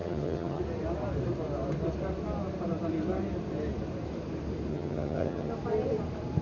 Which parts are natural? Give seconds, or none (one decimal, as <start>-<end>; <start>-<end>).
0.6-4.7; 5.5-6.4